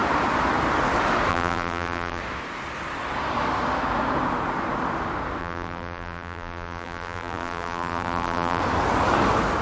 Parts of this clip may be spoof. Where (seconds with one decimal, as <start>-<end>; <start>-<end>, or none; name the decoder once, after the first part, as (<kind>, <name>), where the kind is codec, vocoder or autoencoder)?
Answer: 1.3-2.2 (vocoder, BigVGAN v2); 5.4-8.6